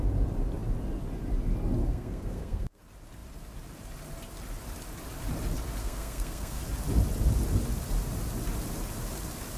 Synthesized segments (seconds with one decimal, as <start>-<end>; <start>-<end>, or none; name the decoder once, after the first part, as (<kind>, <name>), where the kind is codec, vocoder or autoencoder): 1.8-2.8 (codec, SNAC); 5.8-6.6